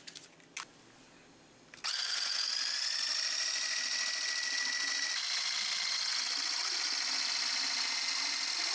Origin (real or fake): real